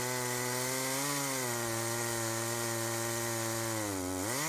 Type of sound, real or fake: real